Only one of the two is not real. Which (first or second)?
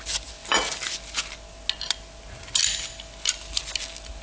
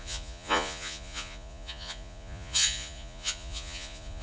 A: second